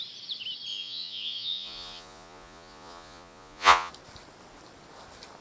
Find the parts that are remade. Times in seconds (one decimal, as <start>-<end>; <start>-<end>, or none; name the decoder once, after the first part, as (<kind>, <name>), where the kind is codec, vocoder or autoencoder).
0.7-3.9 (vocoder, Vocos)